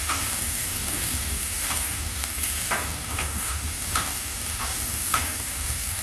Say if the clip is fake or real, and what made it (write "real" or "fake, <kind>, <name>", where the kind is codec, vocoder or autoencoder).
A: fake, codec, DAC